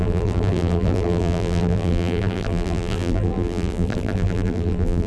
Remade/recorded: remade